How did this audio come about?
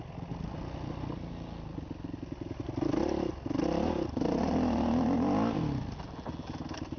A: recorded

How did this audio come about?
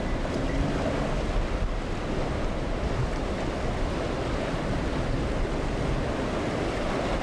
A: recorded